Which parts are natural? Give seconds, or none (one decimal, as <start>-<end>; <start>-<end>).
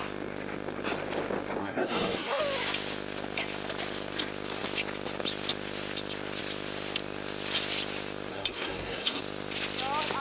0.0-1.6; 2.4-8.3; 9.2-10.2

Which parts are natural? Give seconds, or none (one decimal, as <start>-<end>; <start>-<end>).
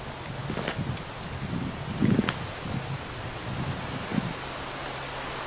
0.0-5.5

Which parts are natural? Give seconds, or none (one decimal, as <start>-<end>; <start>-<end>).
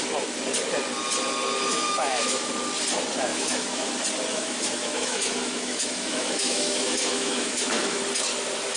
0.0-1.7; 2.5-3.3; 3.9-4.3; 8.0-8.8